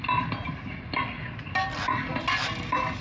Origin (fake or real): real